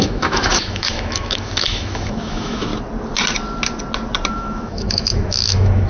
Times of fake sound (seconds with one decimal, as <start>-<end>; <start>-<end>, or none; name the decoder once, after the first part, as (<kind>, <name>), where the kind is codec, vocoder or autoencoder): 0.0-2.7 (autoencoder, DAC-VAE); 4.3-5.9